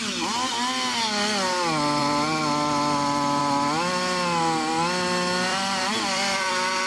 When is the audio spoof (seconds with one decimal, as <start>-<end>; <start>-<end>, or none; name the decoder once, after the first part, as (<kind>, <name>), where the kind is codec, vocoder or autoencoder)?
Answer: 2.0-3.4 (vocoder, BigVGAN v2); 5.5-6.5